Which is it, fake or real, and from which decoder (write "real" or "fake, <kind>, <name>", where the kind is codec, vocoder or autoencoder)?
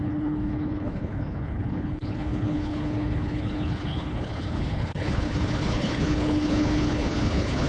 fake, codec, HILCodec